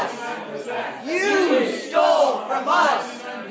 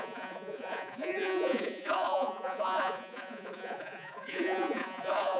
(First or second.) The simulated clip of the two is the second